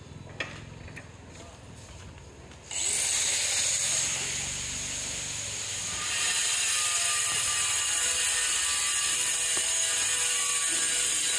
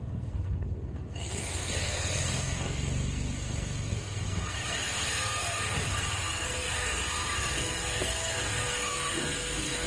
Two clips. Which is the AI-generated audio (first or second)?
second